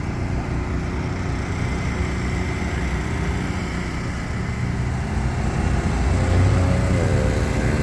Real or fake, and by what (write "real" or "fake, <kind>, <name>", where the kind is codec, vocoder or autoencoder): real